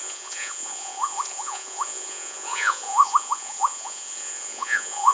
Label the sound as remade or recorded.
remade